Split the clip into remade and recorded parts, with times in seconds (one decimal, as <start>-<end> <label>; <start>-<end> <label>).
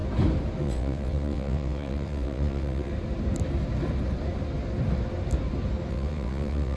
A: 0.0-0.6 recorded; 0.6-2.9 remade; 2.9-5.9 recorded; 5.9-6.8 remade